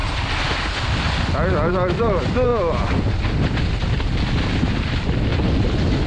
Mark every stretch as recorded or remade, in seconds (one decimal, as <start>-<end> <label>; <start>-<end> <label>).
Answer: 0.0-6.1 recorded